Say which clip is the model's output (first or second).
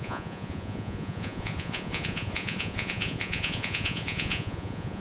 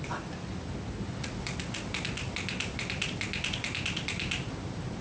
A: first